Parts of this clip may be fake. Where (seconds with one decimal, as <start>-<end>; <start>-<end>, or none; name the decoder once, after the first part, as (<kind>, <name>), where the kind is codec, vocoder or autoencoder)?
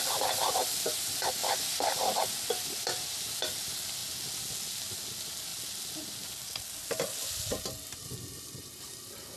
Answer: none